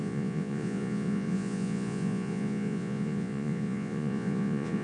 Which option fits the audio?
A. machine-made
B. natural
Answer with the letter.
A